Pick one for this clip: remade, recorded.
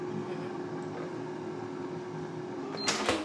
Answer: recorded